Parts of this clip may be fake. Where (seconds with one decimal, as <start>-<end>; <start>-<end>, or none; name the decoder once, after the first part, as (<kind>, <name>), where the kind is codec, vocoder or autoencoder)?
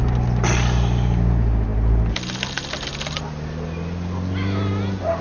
none